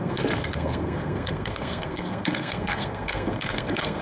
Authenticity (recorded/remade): remade